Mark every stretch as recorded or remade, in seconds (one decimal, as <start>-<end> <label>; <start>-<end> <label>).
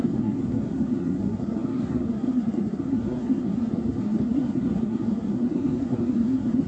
0.0-6.7 remade